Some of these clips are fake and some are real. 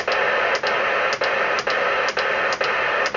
real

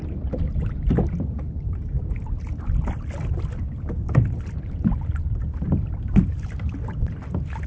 real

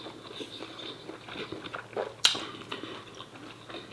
real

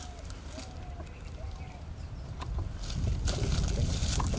real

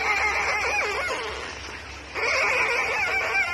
real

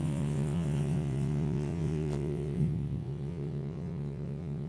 fake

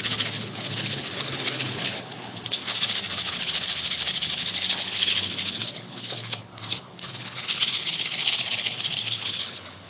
fake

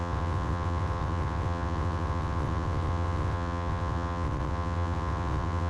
fake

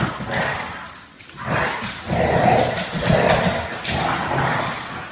real